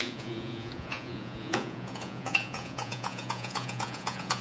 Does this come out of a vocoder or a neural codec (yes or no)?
yes